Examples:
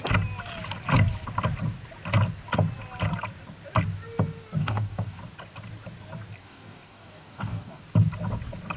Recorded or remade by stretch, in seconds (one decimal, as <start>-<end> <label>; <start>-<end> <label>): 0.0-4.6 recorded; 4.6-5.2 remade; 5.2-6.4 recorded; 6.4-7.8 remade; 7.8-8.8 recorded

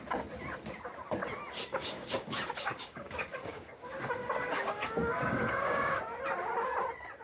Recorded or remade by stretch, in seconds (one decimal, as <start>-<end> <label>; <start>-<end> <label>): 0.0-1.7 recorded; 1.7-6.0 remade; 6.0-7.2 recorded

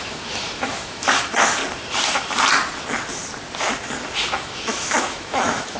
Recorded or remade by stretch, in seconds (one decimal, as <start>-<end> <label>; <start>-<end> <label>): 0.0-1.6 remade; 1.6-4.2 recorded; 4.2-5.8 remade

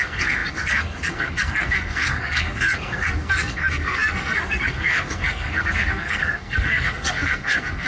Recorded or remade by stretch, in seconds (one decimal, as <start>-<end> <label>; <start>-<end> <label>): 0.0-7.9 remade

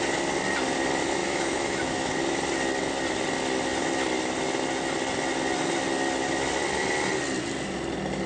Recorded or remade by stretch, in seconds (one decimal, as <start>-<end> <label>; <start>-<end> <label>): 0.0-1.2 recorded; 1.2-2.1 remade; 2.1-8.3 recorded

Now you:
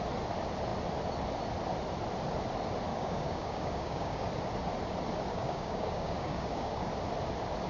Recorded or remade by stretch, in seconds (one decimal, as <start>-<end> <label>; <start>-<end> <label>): 0.0-2.9 recorded; 2.9-4.3 remade; 4.3-5.3 recorded; 5.3-6.9 remade; 6.9-7.7 recorded